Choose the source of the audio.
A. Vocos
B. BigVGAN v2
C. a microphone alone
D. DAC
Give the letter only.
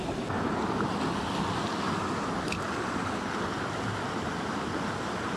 C